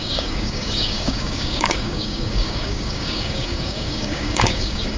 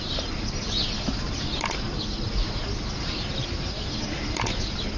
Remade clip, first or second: first